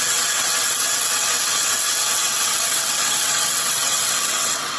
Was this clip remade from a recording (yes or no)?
yes